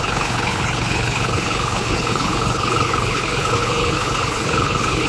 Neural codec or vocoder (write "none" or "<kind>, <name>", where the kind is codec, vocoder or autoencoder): codec, HILCodec